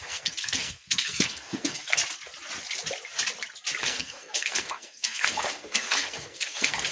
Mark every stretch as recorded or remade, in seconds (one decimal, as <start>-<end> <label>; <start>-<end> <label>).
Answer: 0.0-2.0 remade; 2.0-3.8 recorded; 3.8-6.9 remade